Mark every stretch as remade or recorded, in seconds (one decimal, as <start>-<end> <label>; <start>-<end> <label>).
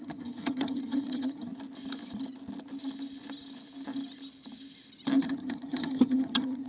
0.0-1.5 remade; 1.5-5.2 recorded; 5.2-6.7 remade